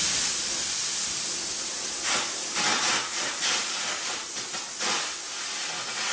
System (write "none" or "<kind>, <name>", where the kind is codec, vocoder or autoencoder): none